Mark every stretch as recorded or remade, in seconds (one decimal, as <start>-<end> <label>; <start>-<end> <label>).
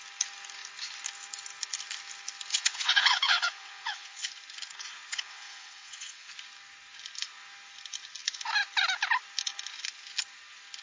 0.0-2.5 recorded; 2.5-4.3 remade; 4.3-5.1 recorded; 5.1-6.3 remade; 6.3-10.8 recorded